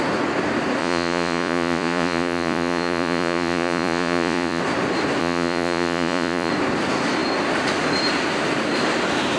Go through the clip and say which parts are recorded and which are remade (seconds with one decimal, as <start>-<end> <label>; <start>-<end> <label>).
0.0-0.8 recorded; 0.8-4.6 remade; 4.6-5.2 recorded; 5.2-6.5 remade; 6.5-9.4 recorded